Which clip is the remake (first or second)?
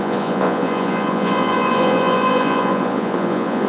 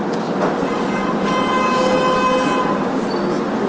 first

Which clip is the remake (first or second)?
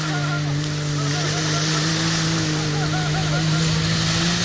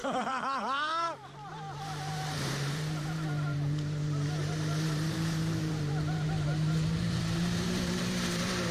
second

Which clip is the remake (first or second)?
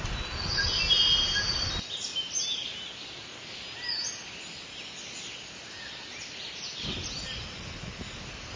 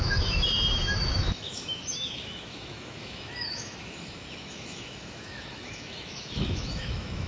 second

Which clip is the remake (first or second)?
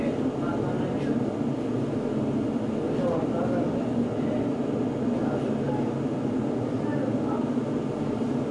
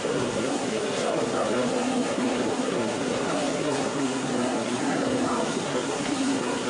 second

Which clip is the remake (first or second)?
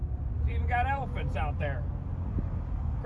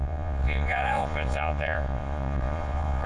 second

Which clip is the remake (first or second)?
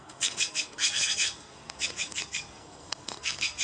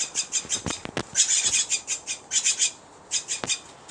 first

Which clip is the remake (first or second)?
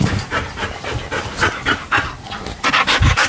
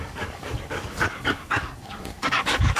second